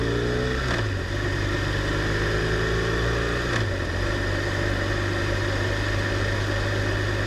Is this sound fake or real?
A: real